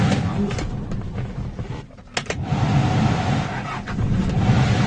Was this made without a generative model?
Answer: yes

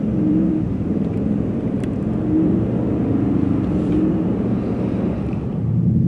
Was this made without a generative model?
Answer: no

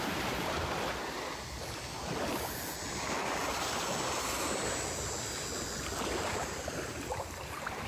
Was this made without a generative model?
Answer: yes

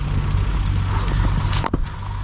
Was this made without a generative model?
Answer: yes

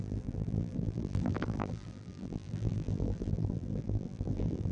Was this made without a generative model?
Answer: no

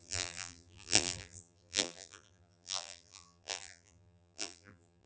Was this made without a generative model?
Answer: no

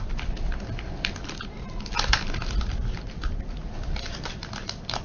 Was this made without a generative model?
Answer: no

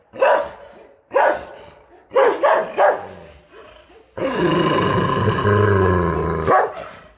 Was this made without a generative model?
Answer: yes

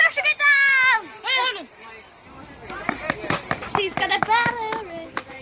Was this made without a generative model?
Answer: yes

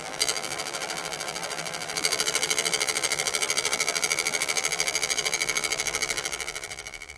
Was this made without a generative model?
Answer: no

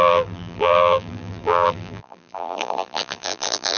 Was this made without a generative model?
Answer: no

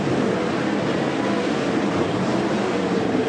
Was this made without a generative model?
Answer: yes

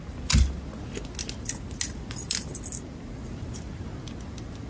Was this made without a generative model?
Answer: yes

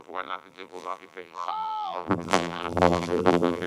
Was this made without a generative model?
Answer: no